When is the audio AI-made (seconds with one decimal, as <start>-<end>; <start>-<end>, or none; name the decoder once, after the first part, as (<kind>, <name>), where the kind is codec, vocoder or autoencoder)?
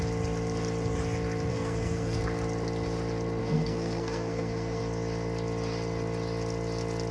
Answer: 1.5-2.2 (codec, SNAC); 3.4-4.8